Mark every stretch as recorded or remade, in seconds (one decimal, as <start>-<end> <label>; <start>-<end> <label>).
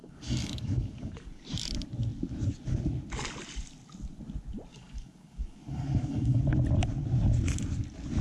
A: 0.0-1.4 remade; 1.4-4.7 recorded; 4.7-6.4 remade; 6.4-8.2 recorded